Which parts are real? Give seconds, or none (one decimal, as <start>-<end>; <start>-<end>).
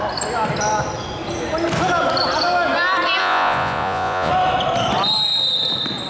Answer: 0.0-3.2; 4.3-6.1